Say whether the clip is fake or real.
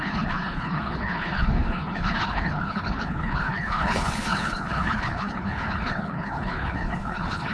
fake